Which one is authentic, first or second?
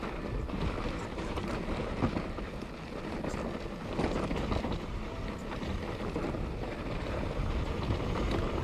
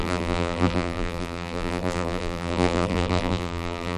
first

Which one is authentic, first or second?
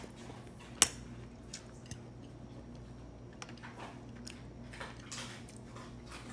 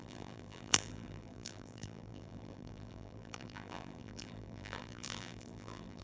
first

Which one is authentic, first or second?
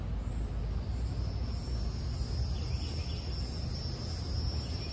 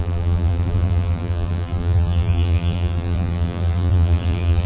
first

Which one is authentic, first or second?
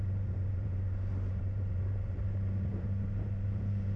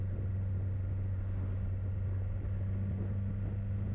second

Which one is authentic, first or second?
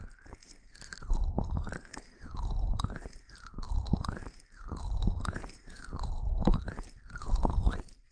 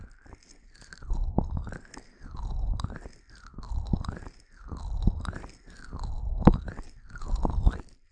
second